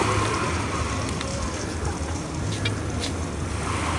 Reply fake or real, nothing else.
real